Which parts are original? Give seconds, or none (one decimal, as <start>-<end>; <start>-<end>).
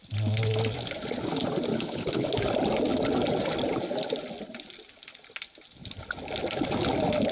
0.0-1.7; 2.3-7.3